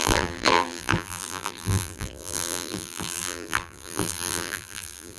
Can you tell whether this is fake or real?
fake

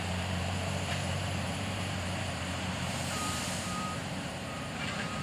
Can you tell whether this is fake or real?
fake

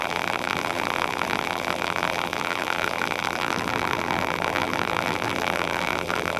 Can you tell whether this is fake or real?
fake